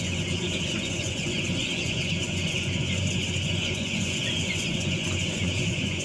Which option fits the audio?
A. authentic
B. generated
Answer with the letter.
B